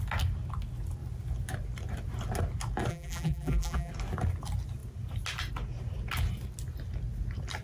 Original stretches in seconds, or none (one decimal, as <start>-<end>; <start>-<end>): 0.0-2.9; 3.9-7.6